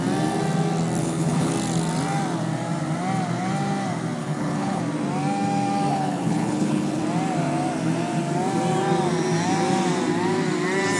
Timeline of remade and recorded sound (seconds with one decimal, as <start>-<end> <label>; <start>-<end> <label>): 0.0-1.0 recorded; 1.0-1.5 remade; 1.5-4.2 recorded; 4.2-4.8 remade; 4.8-5.9 recorded; 5.9-7.0 remade; 7.0-11.0 recorded